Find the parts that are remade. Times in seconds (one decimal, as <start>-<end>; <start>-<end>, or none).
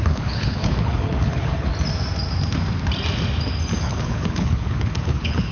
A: 0.0-1.7; 3.8-5.5